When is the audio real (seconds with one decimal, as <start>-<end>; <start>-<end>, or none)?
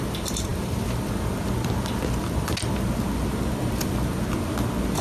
0.0-5.0